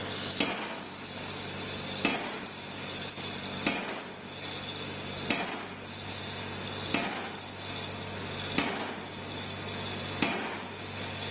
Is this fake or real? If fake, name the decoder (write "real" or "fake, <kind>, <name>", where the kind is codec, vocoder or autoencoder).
real